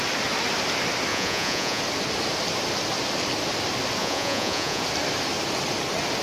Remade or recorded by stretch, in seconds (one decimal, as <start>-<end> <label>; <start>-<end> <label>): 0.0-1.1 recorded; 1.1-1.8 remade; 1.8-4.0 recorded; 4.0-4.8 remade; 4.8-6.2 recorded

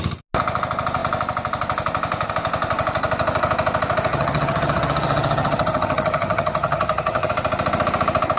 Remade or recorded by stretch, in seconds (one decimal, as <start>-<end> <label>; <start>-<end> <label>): 0.0-4.1 recorded; 4.1-7.3 remade; 7.3-8.4 recorded

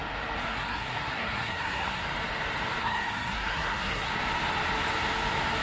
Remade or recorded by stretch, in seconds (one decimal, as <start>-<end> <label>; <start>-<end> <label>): 0.0-0.4 recorded; 0.4-2.0 remade; 2.0-2.8 recorded; 2.8-4.1 remade; 4.1-5.6 recorded

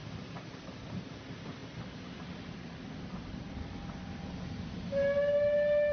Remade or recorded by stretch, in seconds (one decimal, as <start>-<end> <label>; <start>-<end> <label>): 0.0-5.9 recorded

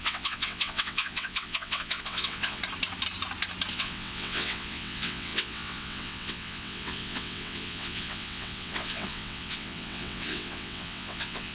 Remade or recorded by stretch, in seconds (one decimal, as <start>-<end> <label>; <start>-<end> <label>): 0.0-2.6 remade; 2.6-3.7 recorded; 3.7-11.5 remade

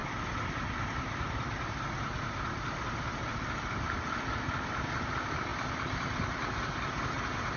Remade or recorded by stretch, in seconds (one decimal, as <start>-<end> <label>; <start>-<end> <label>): 0.0-7.6 recorded